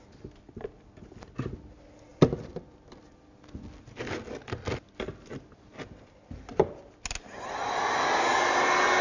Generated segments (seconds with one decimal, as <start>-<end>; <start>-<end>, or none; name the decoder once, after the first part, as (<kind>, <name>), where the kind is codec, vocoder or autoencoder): none